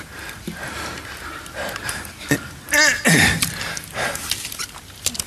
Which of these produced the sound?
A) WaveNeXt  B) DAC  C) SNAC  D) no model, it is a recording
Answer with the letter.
D